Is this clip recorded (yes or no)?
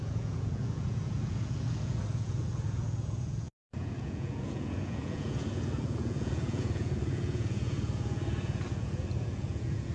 no